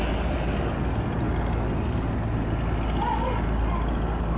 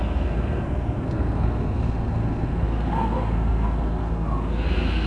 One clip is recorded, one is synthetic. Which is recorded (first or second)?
first